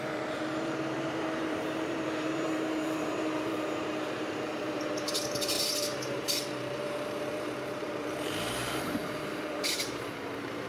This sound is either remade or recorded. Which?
remade